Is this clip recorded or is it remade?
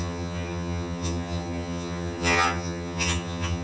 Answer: remade